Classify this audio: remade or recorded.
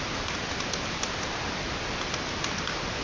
recorded